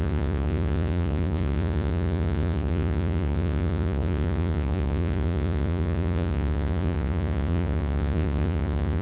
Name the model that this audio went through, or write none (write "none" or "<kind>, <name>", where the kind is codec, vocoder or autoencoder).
vocoder, Vocos